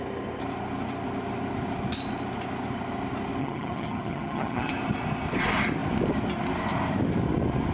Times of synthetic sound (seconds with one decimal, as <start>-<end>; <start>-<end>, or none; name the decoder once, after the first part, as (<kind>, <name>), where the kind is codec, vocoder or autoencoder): 3.4-4.7 (vocoder, HiFi-GAN)